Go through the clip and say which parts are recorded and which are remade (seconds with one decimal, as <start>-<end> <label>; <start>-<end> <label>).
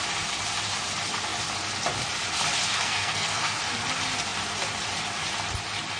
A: 0.0-2.7 recorded; 2.7-3.6 remade; 3.6-6.0 recorded